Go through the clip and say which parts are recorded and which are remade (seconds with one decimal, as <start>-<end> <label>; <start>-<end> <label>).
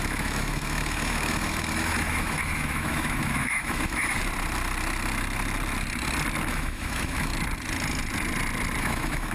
0.0-4.2 remade; 4.2-6.5 recorded; 6.5-7.3 remade; 7.3-8.8 recorded; 8.8-9.3 remade